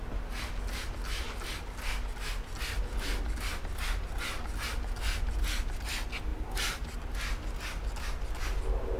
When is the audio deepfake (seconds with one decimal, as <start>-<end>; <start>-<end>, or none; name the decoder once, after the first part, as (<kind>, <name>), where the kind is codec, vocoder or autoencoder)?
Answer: none